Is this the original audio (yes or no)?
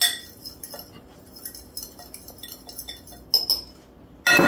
yes